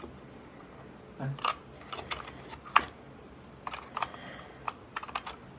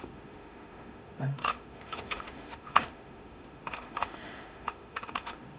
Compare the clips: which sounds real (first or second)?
first